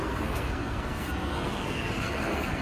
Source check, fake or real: fake